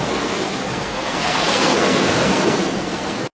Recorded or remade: remade